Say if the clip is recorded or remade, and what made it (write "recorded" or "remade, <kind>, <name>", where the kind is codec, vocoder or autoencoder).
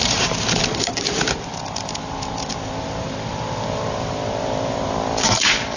remade, vocoder, BigVGAN v2